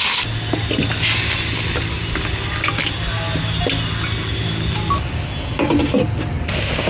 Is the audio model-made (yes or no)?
no